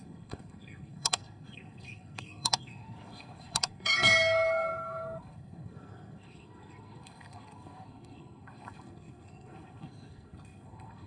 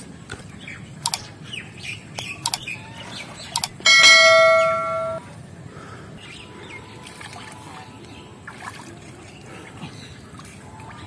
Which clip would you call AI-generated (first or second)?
first